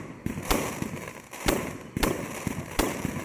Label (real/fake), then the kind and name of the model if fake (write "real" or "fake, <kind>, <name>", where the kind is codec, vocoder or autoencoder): real